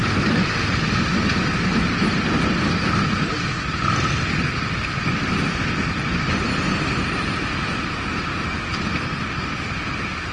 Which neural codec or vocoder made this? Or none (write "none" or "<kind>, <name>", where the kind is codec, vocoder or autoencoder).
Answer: none